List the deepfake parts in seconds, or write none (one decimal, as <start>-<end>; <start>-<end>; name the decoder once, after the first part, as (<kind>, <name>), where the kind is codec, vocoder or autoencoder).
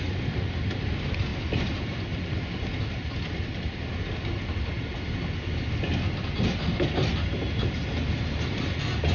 none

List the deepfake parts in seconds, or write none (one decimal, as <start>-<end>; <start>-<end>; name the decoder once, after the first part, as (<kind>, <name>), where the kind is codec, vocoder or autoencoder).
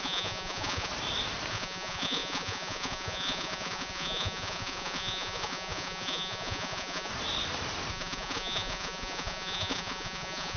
0.0-0.9 (vocoder, Vocos); 1.5-7.1; 7.9-10.6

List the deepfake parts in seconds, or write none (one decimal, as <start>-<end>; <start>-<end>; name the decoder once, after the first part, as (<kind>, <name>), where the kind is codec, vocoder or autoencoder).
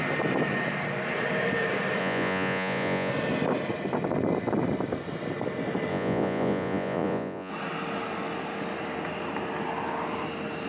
2.0-3.1 (vocoder, Vocos); 5.9-7.5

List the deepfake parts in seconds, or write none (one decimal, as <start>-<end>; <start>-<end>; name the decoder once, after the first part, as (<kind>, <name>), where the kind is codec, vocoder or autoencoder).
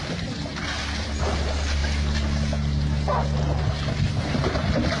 none